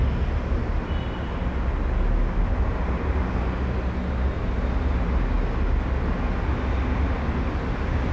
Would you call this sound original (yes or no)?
yes